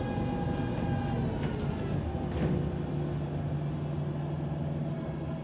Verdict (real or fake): real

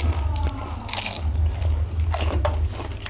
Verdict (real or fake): real